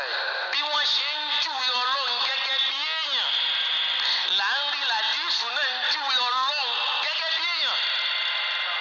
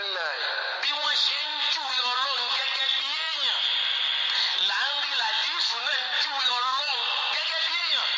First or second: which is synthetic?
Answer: second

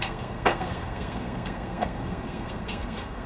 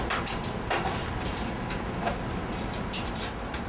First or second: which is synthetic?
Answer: first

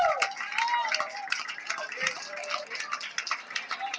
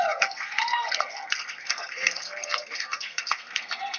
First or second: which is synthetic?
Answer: second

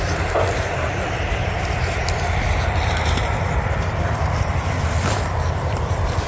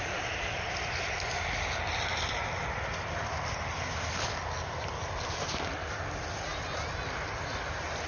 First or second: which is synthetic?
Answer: first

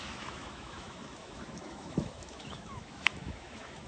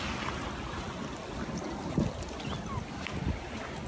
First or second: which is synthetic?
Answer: first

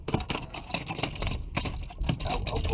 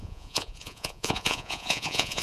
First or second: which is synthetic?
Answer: second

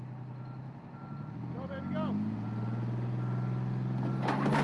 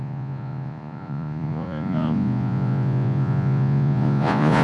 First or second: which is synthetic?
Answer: second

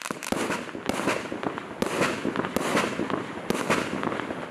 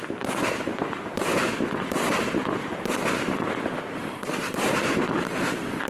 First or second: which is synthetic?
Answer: second